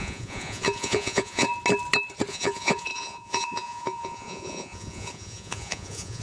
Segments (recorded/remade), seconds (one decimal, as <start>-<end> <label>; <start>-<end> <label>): 0.0-1.5 remade; 1.5-2.3 recorded; 2.3-6.2 remade